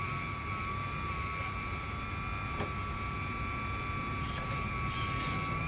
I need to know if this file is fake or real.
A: real